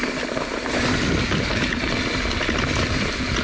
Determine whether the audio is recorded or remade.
recorded